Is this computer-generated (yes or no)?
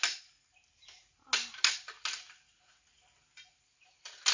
no